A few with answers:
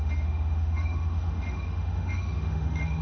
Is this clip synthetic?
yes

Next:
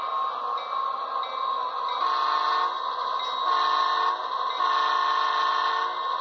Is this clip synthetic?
no